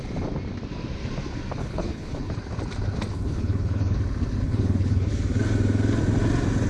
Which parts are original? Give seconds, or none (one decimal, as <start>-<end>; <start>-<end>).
0.0-1.6; 2.3-3.1; 4.0-4.4; 5.1-6.7